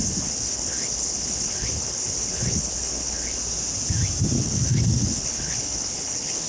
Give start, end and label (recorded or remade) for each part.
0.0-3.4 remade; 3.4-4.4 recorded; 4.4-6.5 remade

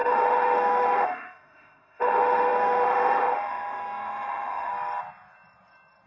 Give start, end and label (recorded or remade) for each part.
0.0-4.7 remade; 4.7-6.1 recorded

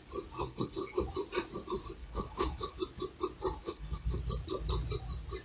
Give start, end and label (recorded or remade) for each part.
0.0-0.4 recorded; 0.4-1.0 remade; 1.0-2.0 recorded; 2.0-2.8 remade; 2.8-3.6 recorded; 3.6-4.2 remade; 4.2-5.4 recorded